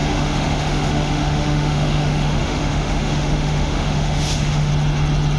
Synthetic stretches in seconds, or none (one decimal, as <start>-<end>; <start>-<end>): 0.0-4.7